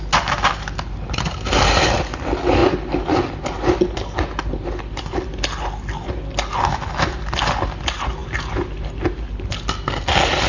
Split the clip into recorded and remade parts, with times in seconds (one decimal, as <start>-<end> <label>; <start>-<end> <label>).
0.0-10.5 recorded